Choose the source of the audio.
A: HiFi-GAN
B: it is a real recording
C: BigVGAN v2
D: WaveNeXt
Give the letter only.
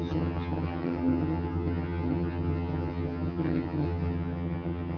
A